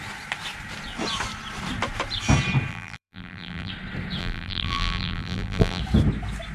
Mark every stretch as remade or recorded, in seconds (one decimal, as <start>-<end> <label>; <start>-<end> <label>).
0.0-2.7 recorded; 2.7-3.7 remade; 3.7-4.2 recorded; 4.2-5.8 remade; 5.8-6.5 recorded